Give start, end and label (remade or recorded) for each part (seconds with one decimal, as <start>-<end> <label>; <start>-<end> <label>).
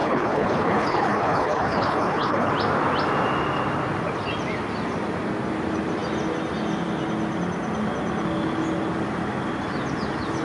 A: 0.0-2.5 remade; 2.5-10.4 recorded